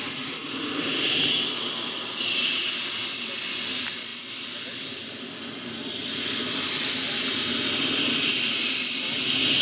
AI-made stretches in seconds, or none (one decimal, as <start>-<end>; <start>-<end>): none